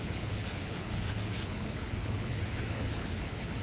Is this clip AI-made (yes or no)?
yes